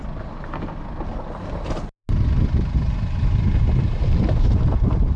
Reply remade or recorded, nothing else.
recorded